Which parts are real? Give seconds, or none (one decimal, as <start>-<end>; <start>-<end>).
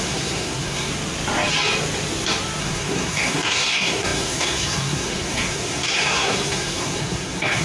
0.9-2.6